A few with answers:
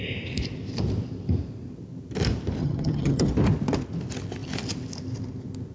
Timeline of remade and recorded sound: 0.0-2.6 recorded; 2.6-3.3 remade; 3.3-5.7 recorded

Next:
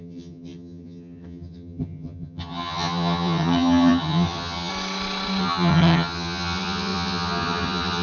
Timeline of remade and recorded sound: 0.0-4.7 remade; 4.7-5.4 recorded; 5.4-8.0 remade

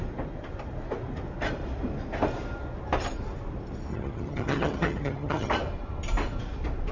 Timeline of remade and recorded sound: 0.0-3.9 recorded; 3.9-5.5 remade; 5.5-6.9 recorded